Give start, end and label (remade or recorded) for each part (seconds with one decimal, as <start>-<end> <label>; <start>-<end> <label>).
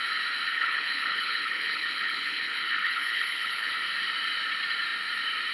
0.0-0.5 recorded; 0.5-3.7 remade; 3.7-5.5 recorded